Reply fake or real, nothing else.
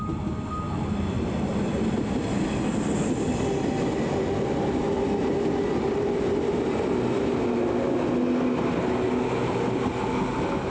real